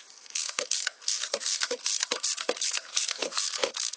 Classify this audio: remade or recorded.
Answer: remade